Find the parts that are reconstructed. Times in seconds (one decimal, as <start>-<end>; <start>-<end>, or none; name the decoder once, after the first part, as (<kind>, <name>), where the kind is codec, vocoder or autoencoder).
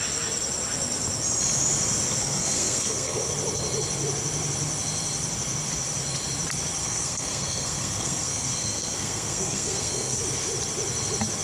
2.2-3.3 (codec, SNAC); 6.8-10.2